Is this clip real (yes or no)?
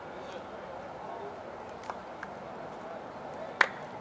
yes